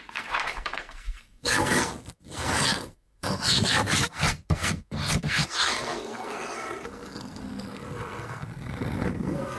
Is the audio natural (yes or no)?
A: no